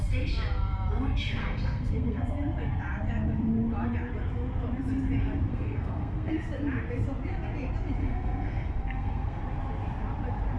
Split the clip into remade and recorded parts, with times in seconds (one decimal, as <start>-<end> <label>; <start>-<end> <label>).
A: 0.0-1.4 recorded; 1.4-2.2 remade; 2.2-5.5 recorded; 5.5-6.3 remade; 6.3-8.0 recorded; 8.0-9.4 remade; 9.4-10.6 recorded